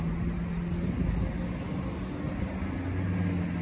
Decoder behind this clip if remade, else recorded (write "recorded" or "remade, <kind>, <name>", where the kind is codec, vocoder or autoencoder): recorded